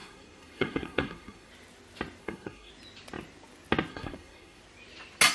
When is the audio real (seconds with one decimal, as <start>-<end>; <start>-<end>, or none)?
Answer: 1.5-2.2; 2.7-3.9; 4.6-5.3